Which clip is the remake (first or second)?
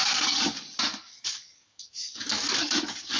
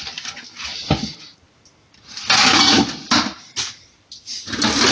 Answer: first